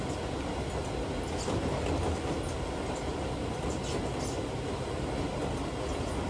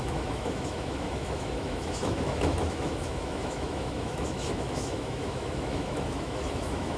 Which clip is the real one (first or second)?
first